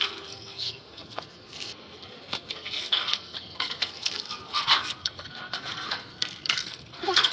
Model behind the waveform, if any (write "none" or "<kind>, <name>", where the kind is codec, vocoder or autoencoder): codec, SNAC